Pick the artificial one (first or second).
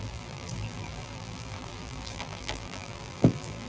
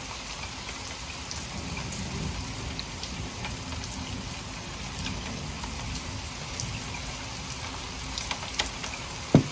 first